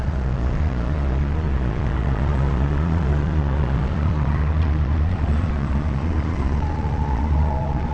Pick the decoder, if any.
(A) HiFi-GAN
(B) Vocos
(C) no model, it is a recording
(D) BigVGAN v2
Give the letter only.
B